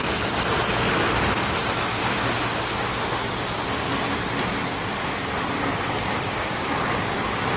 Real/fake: real